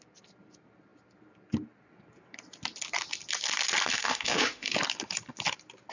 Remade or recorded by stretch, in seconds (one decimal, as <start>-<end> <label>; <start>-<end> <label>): 0.0-3.9 recorded; 3.9-4.7 remade; 4.7-5.9 recorded